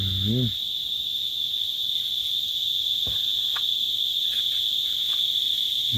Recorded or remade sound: recorded